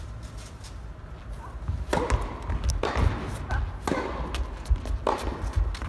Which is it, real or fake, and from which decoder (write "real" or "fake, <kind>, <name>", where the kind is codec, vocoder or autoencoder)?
real